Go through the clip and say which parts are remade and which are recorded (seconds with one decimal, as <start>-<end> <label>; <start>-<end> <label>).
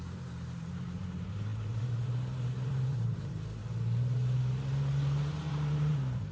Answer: 0.0-3.6 remade; 3.6-5.3 recorded; 5.3-6.3 remade